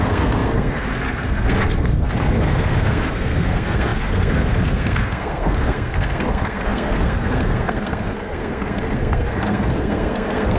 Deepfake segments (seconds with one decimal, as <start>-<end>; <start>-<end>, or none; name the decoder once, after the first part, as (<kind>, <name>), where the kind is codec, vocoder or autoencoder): 0.0-10.6 (codec, SNAC)